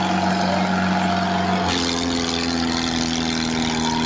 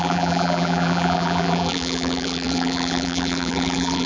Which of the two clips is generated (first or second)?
second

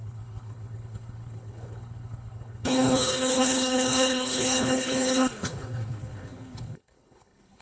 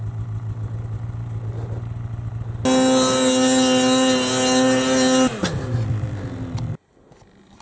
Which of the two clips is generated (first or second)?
first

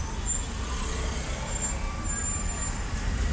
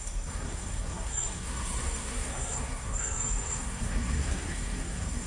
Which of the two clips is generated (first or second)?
second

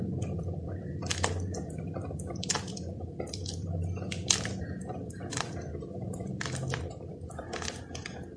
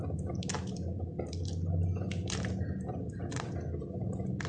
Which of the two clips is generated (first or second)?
first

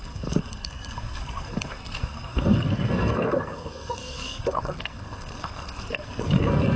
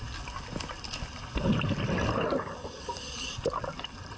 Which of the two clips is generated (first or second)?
first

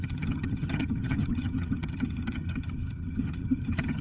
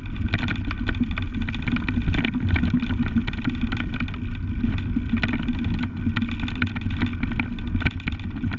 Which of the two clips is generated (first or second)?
first